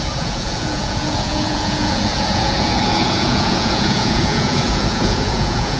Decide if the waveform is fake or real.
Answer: fake